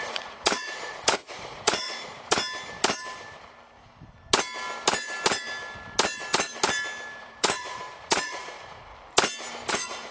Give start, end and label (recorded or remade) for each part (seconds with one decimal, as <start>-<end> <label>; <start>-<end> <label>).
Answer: 0.0-2.4 remade; 2.4-7.2 recorded; 7.2-8.9 remade; 8.9-9.7 recorded; 9.7-10.1 remade